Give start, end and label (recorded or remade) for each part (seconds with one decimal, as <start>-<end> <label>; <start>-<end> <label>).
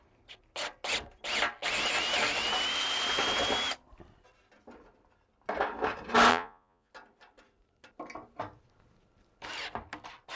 0.0-6.3 recorded; 6.3-6.9 remade; 6.9-10.4 recorded